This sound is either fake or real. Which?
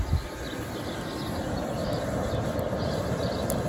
real